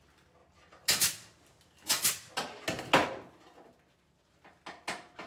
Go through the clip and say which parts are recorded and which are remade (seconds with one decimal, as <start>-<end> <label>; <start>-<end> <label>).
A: 0.0-5.3 recorded